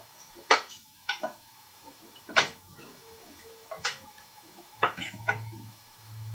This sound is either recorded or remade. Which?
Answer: remade